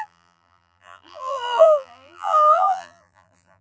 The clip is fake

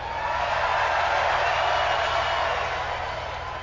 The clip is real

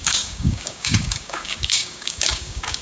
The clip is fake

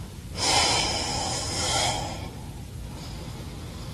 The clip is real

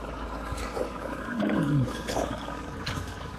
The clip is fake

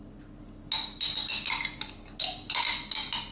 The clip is real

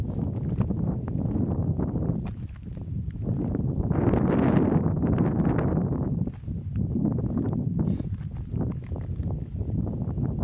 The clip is real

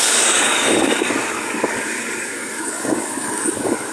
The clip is fake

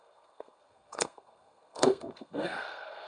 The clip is fake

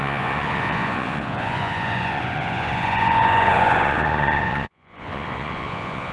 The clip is fake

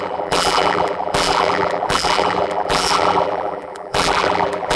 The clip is fake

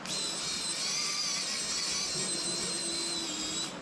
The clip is real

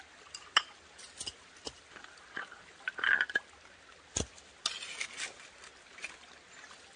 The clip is real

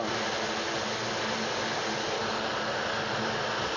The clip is real